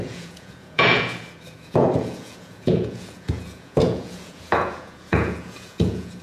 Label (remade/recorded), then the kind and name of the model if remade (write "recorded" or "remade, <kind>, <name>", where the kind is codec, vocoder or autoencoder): remade, vocoder, Vocos